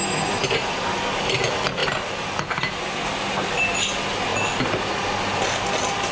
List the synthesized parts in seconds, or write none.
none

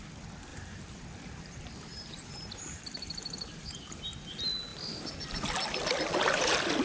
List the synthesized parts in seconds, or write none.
0.5-1.0 (vocoder, BigVGAN v2); 1.9-4.0

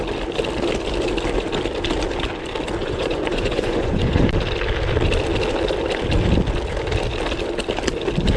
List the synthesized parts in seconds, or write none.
2.8-4.3 (vocoder, Vocos)

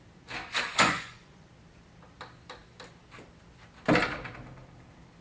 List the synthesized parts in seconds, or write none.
0.7-1.5 (vocoder, Vocos)

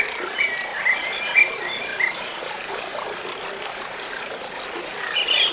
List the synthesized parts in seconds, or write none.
0.7-1.5 (vocoder, BigVGAN v2); 1.9-5.5